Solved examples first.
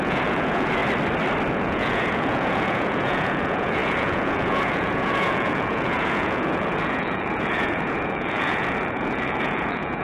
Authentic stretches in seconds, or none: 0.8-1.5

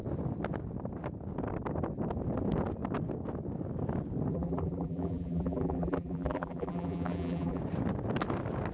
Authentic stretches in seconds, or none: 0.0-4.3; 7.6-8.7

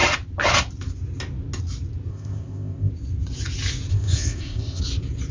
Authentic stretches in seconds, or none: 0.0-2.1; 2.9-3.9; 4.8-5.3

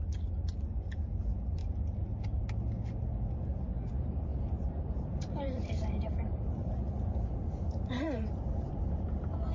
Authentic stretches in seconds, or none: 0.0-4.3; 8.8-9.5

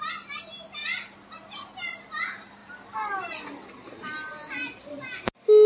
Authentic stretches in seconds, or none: 0.0-5.7